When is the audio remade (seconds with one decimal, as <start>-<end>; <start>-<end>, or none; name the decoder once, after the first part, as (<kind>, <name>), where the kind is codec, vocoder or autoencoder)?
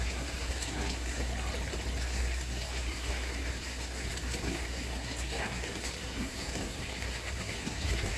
0.0-1.3 (codec, SNAC); 2.0-8.2